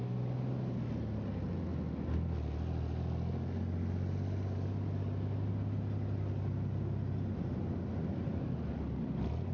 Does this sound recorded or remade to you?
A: recorded